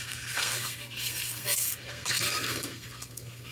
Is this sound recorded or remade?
remade